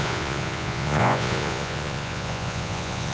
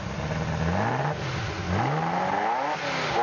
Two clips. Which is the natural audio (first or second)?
second